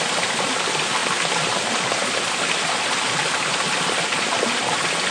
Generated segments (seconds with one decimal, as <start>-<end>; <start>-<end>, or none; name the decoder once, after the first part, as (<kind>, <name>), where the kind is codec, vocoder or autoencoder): none